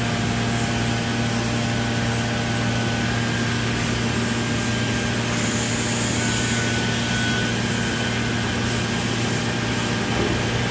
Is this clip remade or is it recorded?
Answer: recorded